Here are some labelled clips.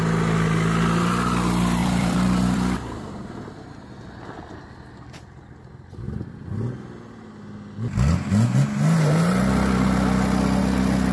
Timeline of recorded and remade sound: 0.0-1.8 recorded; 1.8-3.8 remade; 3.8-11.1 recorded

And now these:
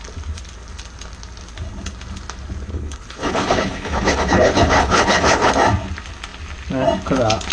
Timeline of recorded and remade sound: 0.0-2.7 recorded; 2.7-5.5 remade; 5.5-7.5 recorded

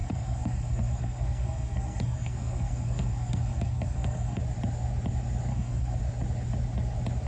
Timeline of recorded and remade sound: 0.0-4.4 remade; 4.4-5.5 recorded; 5.5-6.0 remade; 6.0-7.3 recorded